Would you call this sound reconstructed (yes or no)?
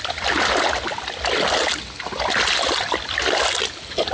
no